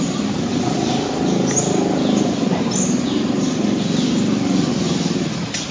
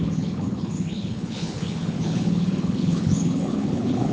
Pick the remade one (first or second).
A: second